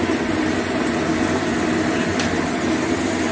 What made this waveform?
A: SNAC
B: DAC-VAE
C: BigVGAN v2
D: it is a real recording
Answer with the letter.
D